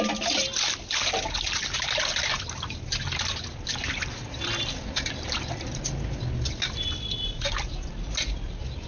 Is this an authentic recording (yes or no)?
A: yes